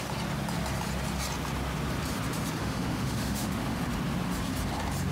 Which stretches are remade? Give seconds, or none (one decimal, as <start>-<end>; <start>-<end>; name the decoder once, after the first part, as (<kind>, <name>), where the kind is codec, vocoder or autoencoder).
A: 2.6-3.8 (autoencoder, DAC-VAE)